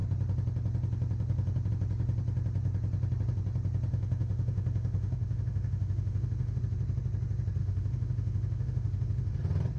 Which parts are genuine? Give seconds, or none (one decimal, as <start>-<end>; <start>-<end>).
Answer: 0.0-3.9; 6.6-7.6; 9.4-9.8